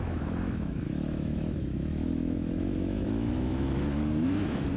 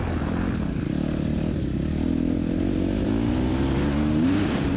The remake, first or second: first